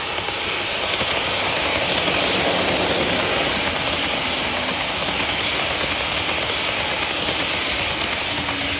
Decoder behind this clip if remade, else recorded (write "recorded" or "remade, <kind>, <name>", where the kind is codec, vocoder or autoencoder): recorded